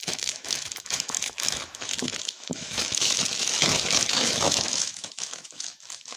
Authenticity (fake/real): fake